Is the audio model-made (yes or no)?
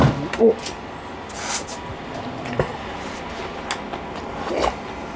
no